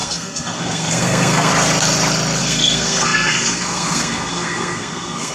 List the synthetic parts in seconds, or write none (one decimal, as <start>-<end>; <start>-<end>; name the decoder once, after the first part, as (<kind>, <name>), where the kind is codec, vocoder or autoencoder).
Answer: 0.0-1.5 (codec, SNAC); 2.4-5.3